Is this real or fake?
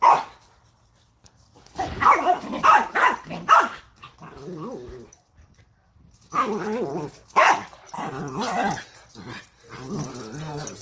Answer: real